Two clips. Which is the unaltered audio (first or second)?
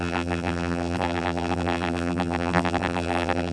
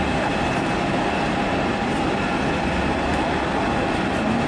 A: second